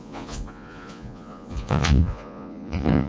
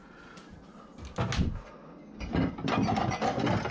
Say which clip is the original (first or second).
second